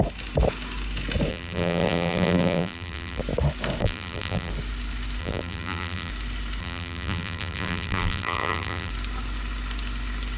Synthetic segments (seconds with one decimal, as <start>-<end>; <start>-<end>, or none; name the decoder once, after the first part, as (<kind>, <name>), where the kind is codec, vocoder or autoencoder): 1.3-3.2 (vocoder, BigVGAN v2); 3.8-4.5; 5.2-6.1; 6.6-8.9